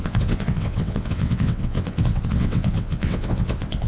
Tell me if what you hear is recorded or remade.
remade